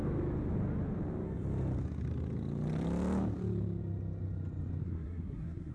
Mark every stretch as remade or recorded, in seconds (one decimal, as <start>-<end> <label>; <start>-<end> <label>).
0.0-4.8 recorded; 4.8-5.7 remade

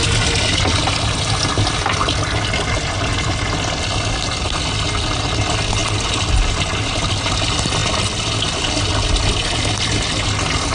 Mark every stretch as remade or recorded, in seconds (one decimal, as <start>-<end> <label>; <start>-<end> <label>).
0.0-10.7 recorded

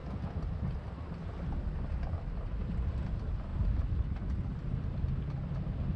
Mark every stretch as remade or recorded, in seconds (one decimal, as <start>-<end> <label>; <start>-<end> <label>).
0.0-2.3 recorded; 2.3-3.5 remade; 3.5-4.0 recorded; 4.0-6.0 remade

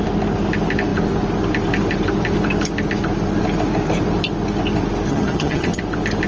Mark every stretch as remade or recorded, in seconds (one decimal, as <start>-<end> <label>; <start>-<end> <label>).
0.0-5.1 recorded; 5.1-5.8 remade; 5.8-6.3 recorded

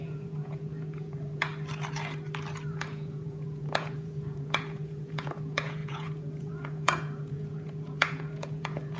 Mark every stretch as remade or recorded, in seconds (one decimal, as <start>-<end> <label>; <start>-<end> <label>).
0.0-1.5 remade; 1.5-2.7 recorded; 2.7-9.0 remade

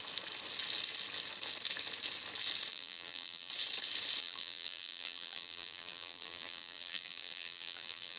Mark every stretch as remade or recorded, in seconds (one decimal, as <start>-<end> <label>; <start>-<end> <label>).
0.0-2.7 recorded; 2.7-3.5 remade; 3.5-4.2 recorded; 4.2-8.2 remade